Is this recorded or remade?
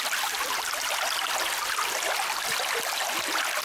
recorded